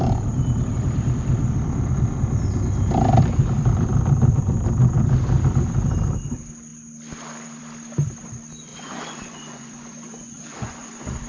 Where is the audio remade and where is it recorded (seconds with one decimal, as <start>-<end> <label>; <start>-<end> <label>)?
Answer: 0.0-8.7 recorded; 8.7-11.3 remade